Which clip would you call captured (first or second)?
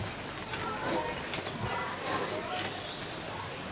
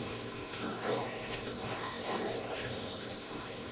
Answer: first